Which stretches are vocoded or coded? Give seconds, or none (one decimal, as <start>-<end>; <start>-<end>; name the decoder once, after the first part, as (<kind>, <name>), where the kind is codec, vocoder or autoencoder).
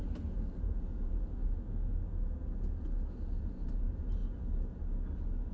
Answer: 0.0-1.4 (vocoder, BigVGAN v2); 3.4-4.2